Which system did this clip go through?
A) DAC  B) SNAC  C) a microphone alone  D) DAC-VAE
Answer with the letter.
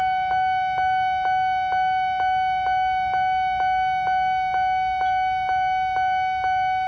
C